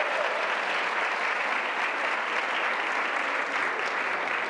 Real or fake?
real